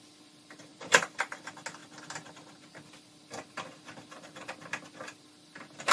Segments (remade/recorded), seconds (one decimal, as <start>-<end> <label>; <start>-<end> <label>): 0.0-0.7 recorded; 0.7-1.4 remade; 1.4-5.9 recorded